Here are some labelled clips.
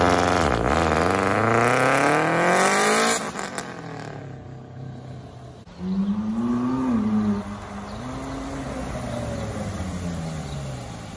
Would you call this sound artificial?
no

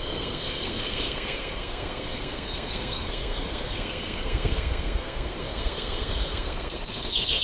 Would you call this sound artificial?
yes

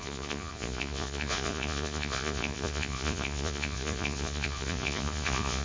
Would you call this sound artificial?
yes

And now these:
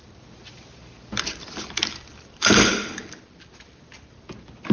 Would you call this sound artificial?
yes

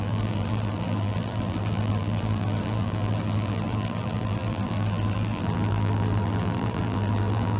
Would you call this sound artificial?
yes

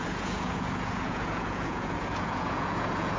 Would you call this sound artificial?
yes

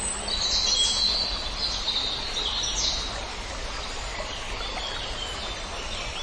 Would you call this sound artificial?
no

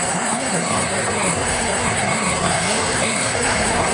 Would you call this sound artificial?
yes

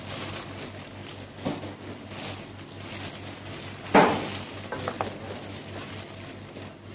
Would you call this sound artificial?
no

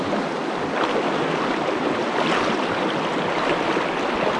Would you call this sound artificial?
no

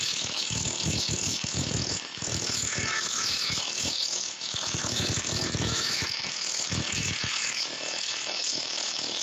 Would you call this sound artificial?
yes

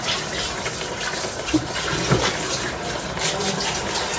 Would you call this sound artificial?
no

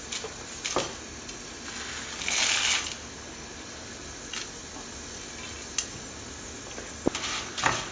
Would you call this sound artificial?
no